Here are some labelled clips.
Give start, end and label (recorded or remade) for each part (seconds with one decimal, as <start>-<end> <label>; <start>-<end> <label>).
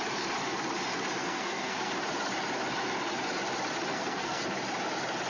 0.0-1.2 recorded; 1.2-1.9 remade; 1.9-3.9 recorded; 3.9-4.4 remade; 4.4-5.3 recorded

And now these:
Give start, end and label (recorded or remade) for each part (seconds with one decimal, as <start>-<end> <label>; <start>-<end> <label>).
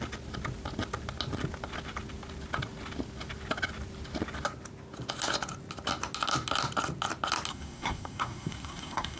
0.0-7.5 recorded; 7.5-9.2 remade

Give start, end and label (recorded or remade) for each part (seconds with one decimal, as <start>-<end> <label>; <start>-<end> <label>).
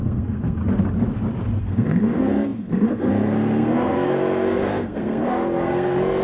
0.0-0.6 remade; 0.6-1.6 recorded; 1.6-6.2 remade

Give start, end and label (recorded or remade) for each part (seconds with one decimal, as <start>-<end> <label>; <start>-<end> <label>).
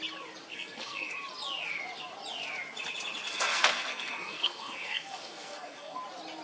0.0-0.5 recorded; 0.5-1.1 remade; 1.1-3.3 recorded; 3.3-6.0 remade; 6.0-6.4 recorded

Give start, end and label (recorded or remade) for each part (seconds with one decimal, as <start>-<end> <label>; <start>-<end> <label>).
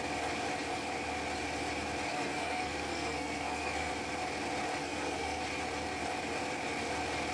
0.0-2.1 recorded; 2.1-3.9 remade; 3.9-4.8 recorded; 4.8-5.4 remade; 5.4-7.3 recorded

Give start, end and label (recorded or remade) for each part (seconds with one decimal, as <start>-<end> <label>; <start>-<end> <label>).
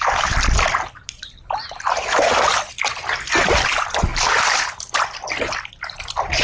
0.0-6.4 recorded